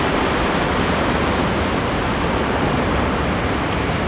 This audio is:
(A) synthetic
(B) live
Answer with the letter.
B